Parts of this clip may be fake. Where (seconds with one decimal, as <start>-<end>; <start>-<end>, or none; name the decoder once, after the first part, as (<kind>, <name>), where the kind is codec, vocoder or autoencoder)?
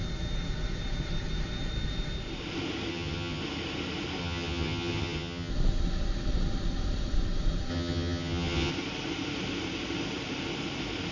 2.9-3.4 (vocoder, HiFi-GAN); 4.2-5.5; 7.7-8.7